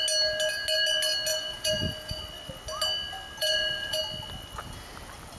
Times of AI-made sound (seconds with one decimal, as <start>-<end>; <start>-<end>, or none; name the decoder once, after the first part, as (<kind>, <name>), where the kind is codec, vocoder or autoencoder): 1.3-2.2 (vocoder, Vocos); 3.4-4.0